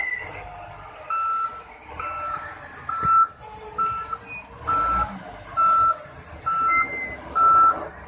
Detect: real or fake real